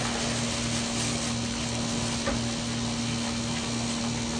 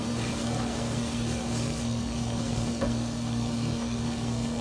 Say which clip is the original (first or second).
first